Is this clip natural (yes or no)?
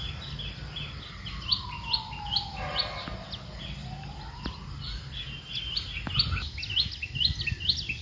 yes